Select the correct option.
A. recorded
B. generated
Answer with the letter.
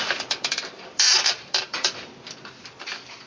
B